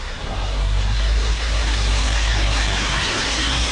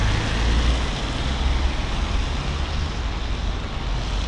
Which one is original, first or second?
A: second